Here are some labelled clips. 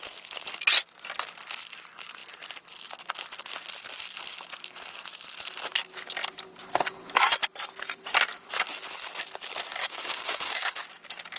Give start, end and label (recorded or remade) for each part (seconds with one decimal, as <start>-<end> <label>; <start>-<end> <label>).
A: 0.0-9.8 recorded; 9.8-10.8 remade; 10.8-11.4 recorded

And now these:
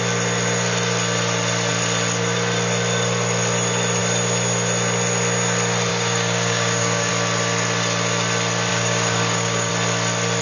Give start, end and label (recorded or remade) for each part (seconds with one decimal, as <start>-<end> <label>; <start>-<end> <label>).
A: 0.0-5.9 recorded; 5.9-7.1 remade; 7.1-8.7 recorded; 8.7-9.7 remade; 9.7-10.4 recorded

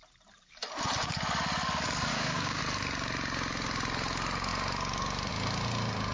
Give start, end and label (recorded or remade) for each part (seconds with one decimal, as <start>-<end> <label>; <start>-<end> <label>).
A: 0.0-2.1 recorded; 2.1-2.6 remade; 2.6-6.1 recorded

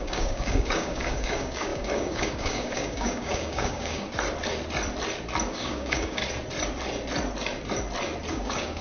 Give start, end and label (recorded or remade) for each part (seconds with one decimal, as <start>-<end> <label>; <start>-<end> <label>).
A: 0.0-4.1 remade; 4.1-5.5 recorded; 5.5-6.2 remade; 6.2-8.3 recorded; 8.3-8.8 remade

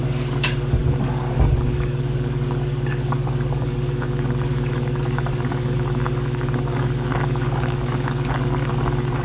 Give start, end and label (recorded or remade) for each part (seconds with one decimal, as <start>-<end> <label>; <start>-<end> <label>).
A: 0.0-9.2 remade

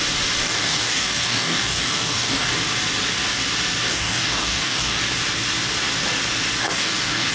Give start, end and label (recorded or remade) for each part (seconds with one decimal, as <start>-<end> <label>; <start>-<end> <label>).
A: 0.0-0.4 recorded; 0.4-2.5 remade; 2.5-3.9 recorded; 3.9-5.0 remade; 5.0-6.6 recorded; 6.6-7.3 remade

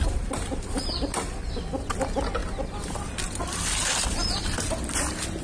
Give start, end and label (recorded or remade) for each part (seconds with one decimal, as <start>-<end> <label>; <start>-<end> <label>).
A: 0.0-5.4 recorded

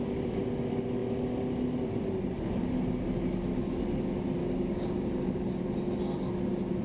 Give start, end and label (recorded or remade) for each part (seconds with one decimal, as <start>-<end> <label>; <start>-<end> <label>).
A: 0.0-4.4 recorded; 4.4-5.6 remade; 5.6-6.8 recorded